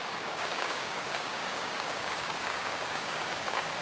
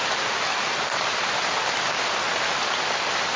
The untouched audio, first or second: second